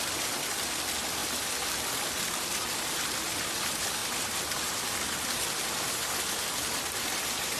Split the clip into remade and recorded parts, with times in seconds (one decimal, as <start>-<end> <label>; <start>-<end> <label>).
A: 0.0-1.2 recorded; 1.2-3.3 remade; 3.3-4.0 recorded; 4.0-5.9 remade; 5.9-7.6 recorded